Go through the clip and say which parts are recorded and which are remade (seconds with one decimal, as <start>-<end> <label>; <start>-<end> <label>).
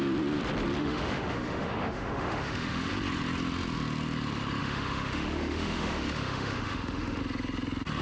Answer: 0.0-0.8 recorded; 0.8-2.9 remade; 2.9-4.6 recorded; 4.6-7.2 remade; 7.2-8.0 recorded